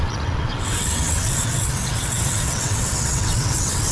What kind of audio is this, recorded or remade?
remade